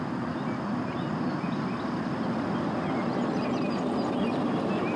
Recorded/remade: recorded